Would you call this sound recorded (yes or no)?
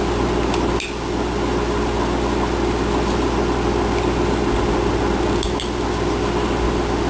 yes